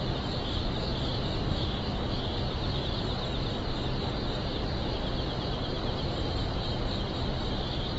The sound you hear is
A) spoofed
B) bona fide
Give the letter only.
B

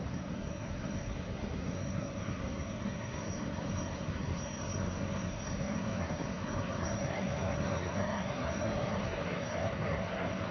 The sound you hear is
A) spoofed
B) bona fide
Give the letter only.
A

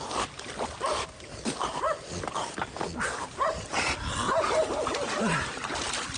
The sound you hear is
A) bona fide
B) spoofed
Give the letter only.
A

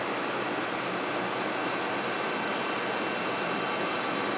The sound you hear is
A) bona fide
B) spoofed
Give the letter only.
A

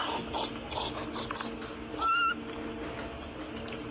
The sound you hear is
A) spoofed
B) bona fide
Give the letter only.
B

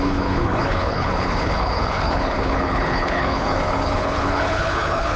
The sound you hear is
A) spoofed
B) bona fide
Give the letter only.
A